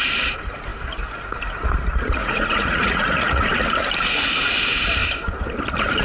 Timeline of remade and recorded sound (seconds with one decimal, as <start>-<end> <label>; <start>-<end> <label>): 0.0-2.2 recorded; 2.2-3.5 remade; 3.5-6.0 recorded